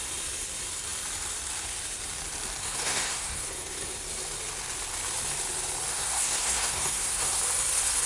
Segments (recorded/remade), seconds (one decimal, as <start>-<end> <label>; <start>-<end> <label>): 0.0-2.6 recorded; 2.6-3.8 remade; 3.8-5.9 recorded; 5.9-7.4 remade; 7.4-8.1 recorded